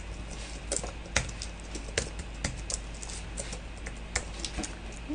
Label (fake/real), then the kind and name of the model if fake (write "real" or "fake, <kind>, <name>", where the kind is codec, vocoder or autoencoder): real